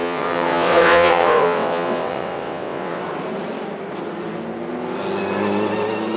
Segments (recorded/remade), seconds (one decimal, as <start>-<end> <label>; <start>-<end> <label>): 0.0-3.0 remade; 3.0-6.2 recorded